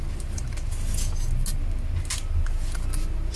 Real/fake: real